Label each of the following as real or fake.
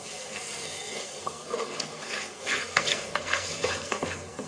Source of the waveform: fake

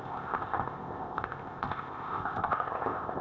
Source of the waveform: fake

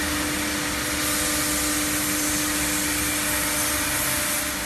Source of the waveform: real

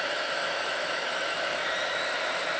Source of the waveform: fake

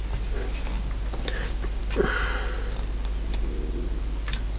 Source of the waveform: real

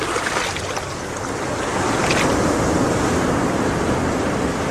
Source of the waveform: real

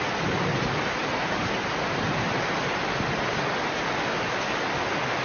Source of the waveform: real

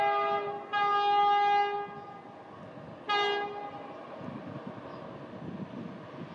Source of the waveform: real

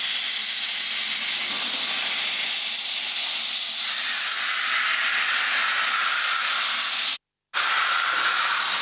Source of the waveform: real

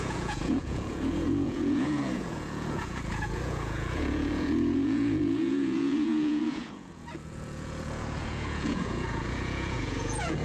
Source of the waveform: fake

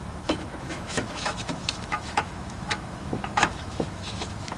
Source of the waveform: fake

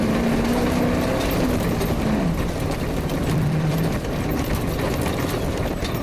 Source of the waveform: fake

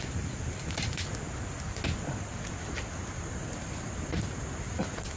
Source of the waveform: real